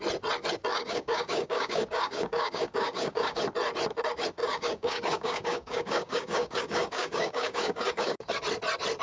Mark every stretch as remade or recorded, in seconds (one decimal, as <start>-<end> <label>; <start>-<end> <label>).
0.0-0.7 recorded; 0.7-3.4 remade; 3.4-4.4 recorded; 4.4-8.3 remade; 8.3-9.0 recorded